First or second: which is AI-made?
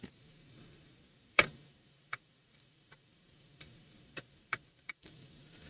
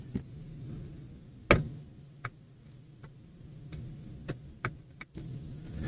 first